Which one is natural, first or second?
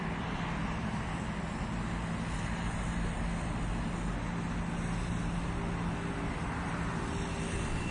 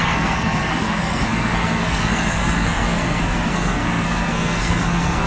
first